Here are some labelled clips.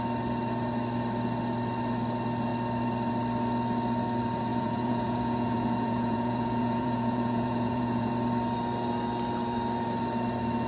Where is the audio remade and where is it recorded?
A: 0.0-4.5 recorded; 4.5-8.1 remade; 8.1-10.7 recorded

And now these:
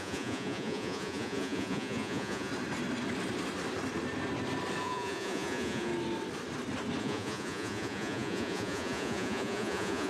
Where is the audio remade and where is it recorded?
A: 0.0-2.5 remade; 2.5-4.8 recorded; 4.8-5.9 remade; 5.9-7.0 recorded; 7.0-10.1 remade

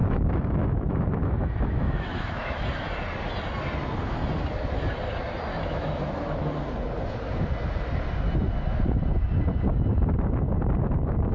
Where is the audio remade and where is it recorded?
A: 0.0-2.6 remade; 2.6-5.5 recorded; 5.5-6.1 remade; 6.1-11.3 recorded

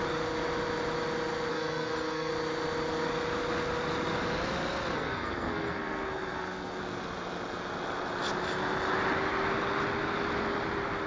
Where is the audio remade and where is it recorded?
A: 0.0-1.5 recorded; 1.5-2.3 remade; 2.3-4.9 recorded; 4.9-6.8 remade; 6.8-11.1 recorded

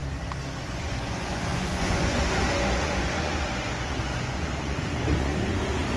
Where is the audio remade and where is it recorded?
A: 0.0-0.6 recorded; 0.6-6.0 remade

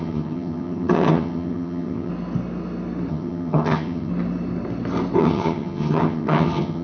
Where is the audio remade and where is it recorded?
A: 0.0-2.1 remade; 2.1-3.1 recorded; 3.1-4.1 remade; 4.1-5.2 recorded; 5.2-6.8 remade